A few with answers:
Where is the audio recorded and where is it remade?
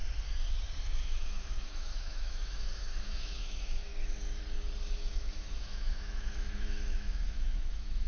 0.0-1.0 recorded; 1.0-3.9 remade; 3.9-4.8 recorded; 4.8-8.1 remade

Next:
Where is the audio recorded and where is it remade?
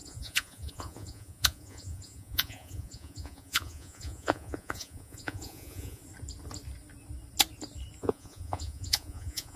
0.0-6.0 remade; 6.0-8.0 recorded; 8.0-9.6 remade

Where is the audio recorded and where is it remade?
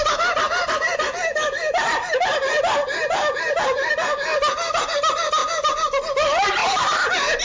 0.0-1.3 recorded; 1.3-3.9 remade; 3.9-5.4 recorded; 5.4-6.0 remade; 6.0-6.6 recorded; 6.6-7.4 remade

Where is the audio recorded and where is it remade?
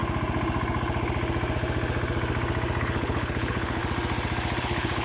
0.0-2.8 recorded; 2.8-3.8 remade; 3.8-4.6 recorded; 4.6-5.0 remade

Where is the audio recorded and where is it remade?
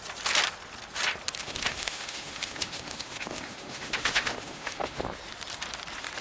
0.0-1.4 recorded; 1.4-5.0 remade; 5.0-6.2 recorded